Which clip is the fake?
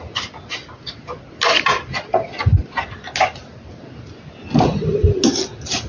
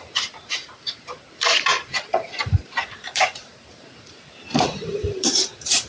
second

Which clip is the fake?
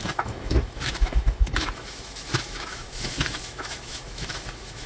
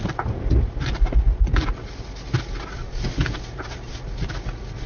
first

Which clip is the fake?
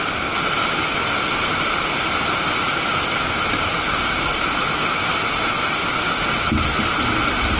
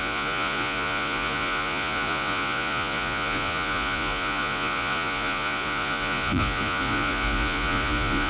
second